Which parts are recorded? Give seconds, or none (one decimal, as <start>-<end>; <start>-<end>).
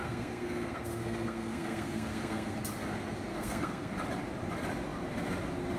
2.6-3.3; 3.9-5.8